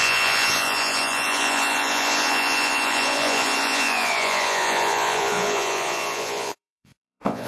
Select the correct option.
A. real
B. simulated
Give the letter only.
B